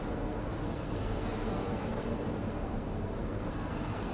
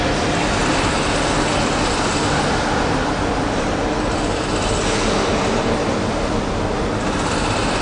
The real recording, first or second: second